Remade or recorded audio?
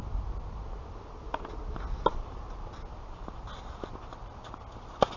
recorded